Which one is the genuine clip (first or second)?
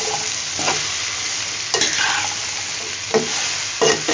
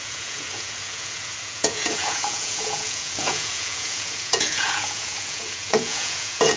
first